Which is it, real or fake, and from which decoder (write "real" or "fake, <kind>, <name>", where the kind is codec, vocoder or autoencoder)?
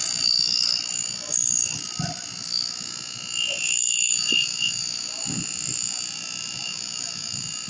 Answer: real